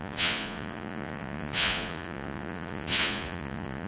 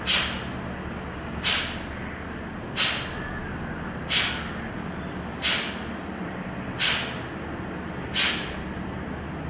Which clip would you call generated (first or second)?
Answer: first